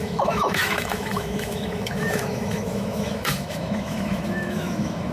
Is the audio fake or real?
fake